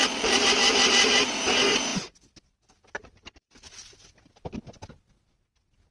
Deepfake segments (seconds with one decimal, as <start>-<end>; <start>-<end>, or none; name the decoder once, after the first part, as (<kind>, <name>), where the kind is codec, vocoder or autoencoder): 0.0-0.9 (vocoder, BigVGAN v2)

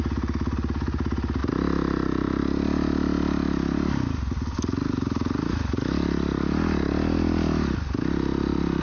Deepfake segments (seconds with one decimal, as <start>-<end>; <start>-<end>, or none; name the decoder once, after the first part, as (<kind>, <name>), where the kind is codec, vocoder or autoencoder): none

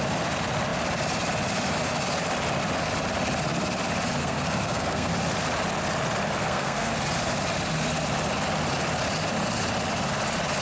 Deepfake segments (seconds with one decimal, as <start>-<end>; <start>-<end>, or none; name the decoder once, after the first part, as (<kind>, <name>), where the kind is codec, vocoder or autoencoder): 4.2-5.1 (codec, SNAC); 6.4-6.9

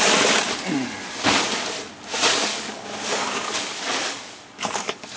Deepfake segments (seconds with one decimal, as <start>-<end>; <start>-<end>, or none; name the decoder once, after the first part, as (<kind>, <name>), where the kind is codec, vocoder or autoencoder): 2.3-5.2 (codec, DAC)

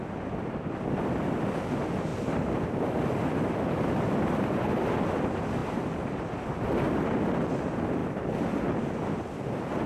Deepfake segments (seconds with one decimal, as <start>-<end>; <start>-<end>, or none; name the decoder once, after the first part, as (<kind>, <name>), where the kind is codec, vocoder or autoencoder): 2.1-3.0 (vocoder, BigVGAN v2); 8.0-8.5

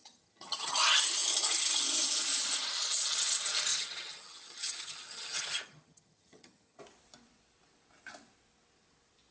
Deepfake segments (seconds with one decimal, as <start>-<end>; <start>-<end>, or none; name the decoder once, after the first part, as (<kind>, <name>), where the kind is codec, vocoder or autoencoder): 0.0-0.7 (vocoder, HiFi-GAN); 3.7-6.8

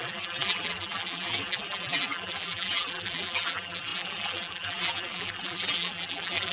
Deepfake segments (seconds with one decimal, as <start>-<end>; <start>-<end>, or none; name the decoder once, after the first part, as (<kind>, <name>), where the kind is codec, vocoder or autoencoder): 0.0-6.5 (vocoder, BigVGAN v2)

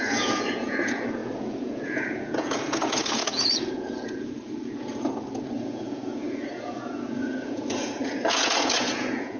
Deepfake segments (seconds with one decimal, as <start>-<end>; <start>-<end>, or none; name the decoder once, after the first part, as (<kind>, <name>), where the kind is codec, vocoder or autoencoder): 0.0-9.4 (vocoder, Vocos)